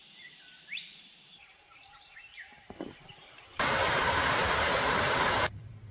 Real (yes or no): no